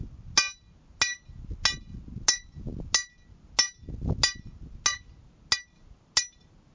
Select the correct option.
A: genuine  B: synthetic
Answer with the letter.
A